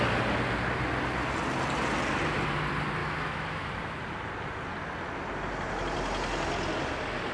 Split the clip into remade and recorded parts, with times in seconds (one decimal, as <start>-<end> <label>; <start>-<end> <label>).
0.0-3.0 recorded; 3.0-3.7 remade; 3.7-7.3 recorded